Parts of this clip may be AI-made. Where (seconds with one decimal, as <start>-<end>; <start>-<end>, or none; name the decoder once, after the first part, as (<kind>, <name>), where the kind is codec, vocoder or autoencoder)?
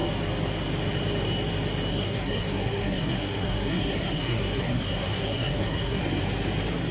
1.9-6.0 (codec, SNAC)